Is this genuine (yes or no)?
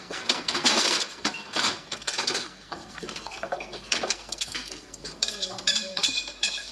no